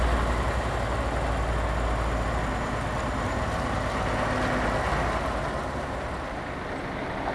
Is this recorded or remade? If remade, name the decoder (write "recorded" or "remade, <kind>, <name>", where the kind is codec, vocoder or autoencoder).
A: recorded